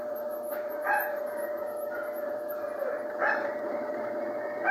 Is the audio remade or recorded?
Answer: recorded